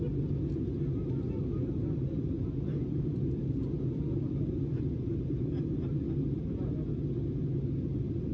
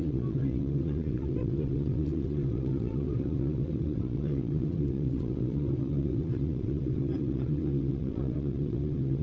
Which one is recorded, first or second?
first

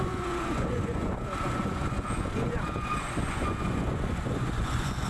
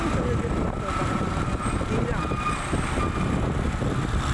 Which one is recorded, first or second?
second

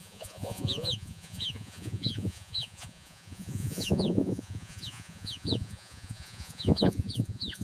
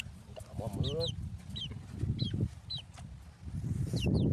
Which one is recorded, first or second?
second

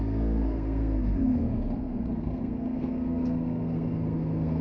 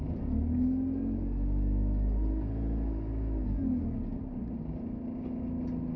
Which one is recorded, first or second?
second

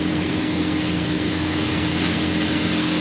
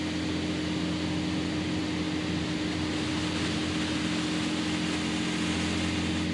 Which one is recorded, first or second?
second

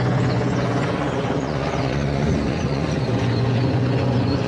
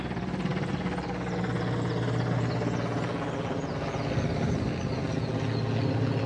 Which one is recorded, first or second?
second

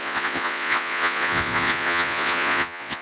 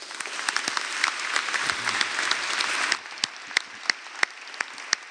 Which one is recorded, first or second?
second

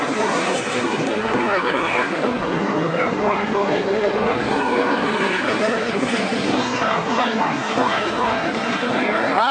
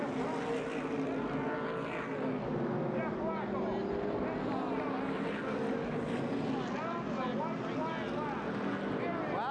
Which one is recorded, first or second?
second